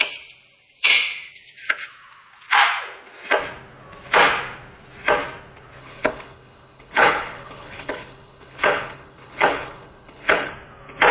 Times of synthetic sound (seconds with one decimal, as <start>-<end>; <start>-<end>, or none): 5.8-10.5